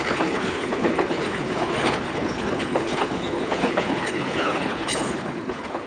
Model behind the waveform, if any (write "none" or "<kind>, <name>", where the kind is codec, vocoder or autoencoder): codec, HILCodec